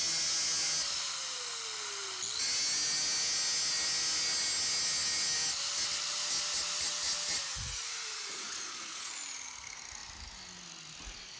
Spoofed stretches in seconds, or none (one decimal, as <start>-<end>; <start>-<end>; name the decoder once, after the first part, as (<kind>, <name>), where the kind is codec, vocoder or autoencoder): 7.5-9.1 (vocoder, Vocos)